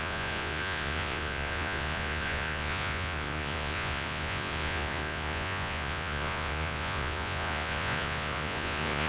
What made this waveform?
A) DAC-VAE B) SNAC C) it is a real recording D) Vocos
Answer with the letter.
D